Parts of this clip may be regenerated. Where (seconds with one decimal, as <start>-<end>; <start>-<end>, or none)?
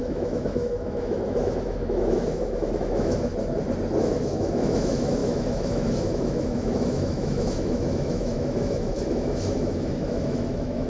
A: 0.0-3.3; 4.0-10.9